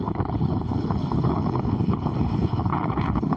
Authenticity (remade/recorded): remade